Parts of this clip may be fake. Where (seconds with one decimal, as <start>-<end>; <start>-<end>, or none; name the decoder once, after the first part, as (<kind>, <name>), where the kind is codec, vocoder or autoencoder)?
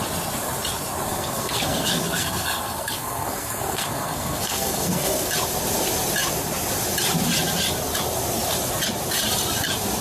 1.1-5.3 (codec, SNAC)